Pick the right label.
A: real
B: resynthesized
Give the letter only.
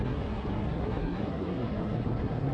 B